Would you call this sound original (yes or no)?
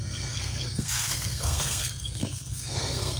no